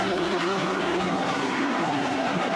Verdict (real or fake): fake